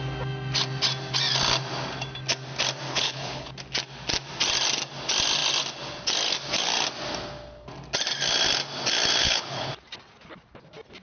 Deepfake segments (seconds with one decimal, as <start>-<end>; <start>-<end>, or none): 2.9-3.5; 9.2-9.7